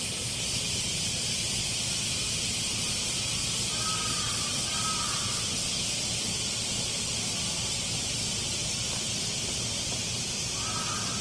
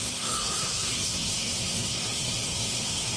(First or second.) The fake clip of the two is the second